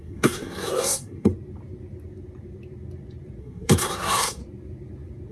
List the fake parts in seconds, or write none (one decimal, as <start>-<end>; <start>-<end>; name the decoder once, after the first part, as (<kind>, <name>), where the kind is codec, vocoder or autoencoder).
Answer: 0.0-1.3 (codec, SNAC); 3.4-4.4